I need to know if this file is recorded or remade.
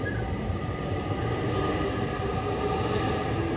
recorded